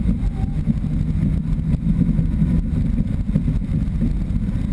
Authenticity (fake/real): real